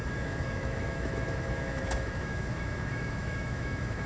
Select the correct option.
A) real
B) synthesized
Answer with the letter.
B